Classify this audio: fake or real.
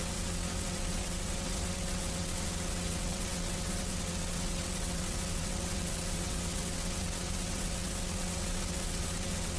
fake